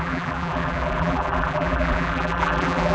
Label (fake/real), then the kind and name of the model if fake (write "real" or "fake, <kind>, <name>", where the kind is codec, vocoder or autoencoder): fake, vocoder, BigVGAN v2